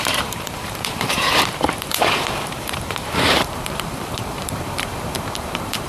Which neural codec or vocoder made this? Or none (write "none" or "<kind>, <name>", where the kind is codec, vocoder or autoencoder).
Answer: vocoder, BigVGAN v2